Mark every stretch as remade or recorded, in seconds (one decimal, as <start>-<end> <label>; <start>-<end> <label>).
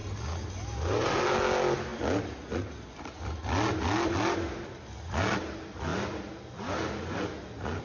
0.0-7.8 recorded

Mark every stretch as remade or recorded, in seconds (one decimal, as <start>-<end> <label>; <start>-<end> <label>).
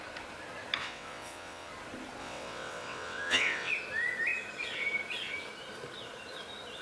0.0-0.8 recorded; 0.8-1.7 remade; 1.7-2.2 recorded; 2.2-3.7 remade; 3.7-6.8 recorded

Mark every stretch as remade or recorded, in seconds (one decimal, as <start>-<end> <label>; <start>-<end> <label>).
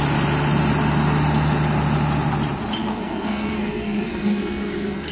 0.0-2.8 recorded; 2.8-5.1 remade